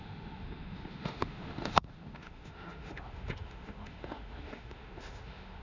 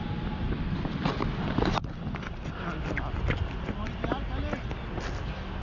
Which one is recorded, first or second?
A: second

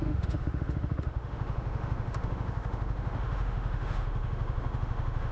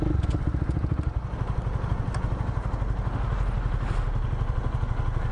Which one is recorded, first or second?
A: second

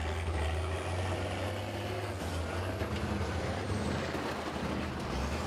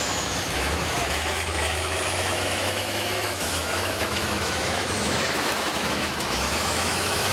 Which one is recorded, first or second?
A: first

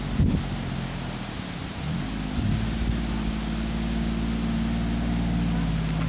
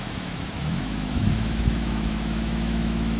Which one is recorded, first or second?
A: first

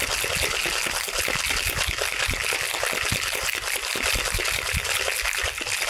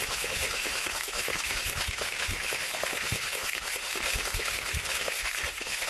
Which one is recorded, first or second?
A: first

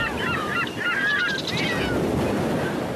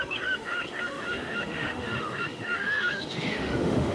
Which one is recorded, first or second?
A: first